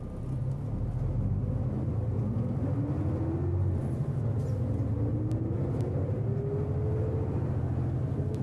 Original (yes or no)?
yes